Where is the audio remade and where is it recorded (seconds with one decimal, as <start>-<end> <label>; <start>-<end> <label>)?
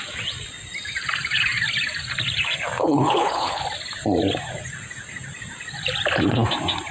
0.0-2.8 recorded; 2.8-3.6 remade; 3.6-6.9 recorded